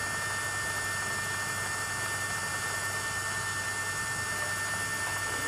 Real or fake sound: real